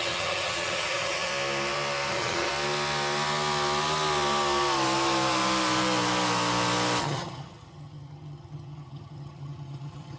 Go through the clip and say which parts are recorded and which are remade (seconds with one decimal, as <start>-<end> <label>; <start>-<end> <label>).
0.0-1.3 remade; 1.3-2.1 recorded; 2.1-2.5 remade; 2.5-7.0 recorded; 7.0-10.2 remade